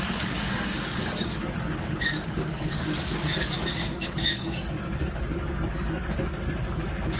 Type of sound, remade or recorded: remade